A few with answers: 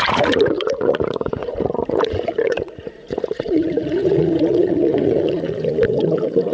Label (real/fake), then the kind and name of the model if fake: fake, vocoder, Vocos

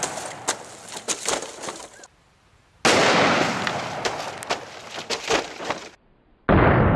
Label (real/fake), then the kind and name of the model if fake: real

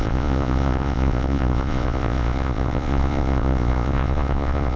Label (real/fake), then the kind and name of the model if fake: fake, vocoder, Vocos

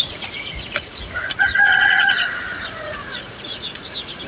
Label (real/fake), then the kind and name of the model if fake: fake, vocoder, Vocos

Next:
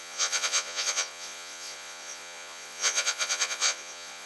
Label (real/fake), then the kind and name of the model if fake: fake, vocoder, Vocos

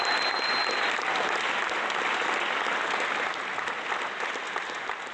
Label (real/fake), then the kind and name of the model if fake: real